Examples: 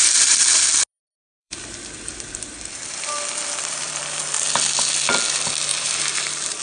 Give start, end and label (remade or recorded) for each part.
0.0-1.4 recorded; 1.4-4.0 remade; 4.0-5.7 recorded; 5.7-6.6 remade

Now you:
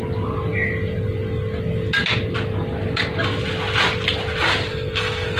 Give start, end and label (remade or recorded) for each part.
0.0-4.7 recorded; 4.7-5.4 remade

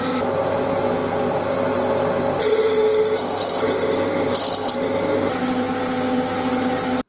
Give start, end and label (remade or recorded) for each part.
0.0-7.1 recorded

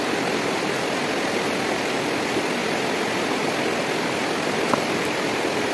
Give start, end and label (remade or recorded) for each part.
0.0-5.7 recorded

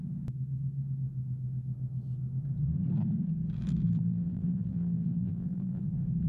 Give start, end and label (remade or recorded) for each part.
0.0-3.8 recorded; 3.8-5.8 remade; 5.8-6.3 recorded